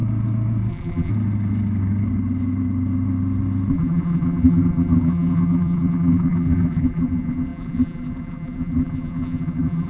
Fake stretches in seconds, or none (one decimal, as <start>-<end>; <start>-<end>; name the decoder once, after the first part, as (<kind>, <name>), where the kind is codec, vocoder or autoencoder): 0.7-1.1 (vocoder, BigVGAN v2); 3.7-9.9